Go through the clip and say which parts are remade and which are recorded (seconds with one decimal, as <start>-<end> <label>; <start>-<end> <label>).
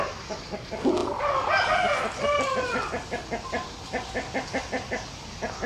0.0-5.7 recorded